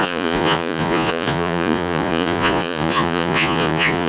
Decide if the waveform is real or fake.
fake